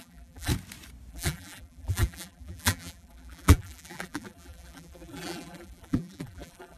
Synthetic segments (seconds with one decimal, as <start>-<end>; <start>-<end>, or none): 0.0-0.5; 1.1-6.8